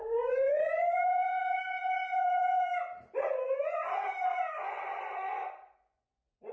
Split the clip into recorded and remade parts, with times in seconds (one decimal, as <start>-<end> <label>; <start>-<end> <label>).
0.0-2.7 remade; 2.7-3.3 recorded; 3.3-6.5 remade